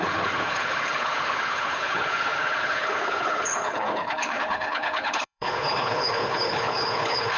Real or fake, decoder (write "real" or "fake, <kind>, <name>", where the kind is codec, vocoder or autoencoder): fake, codec, HILCodec